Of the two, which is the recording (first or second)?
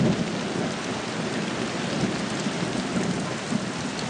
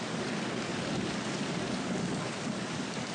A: first